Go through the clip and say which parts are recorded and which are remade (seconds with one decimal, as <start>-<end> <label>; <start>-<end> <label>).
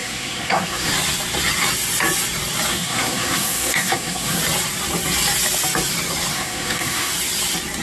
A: 0.0-0.9 remade; 0.9-2.7 recorded; 2.7-4.4 remade; 4.4-6.3 recorded; 6.3-7.1 remade; 7.1-7.8 recorded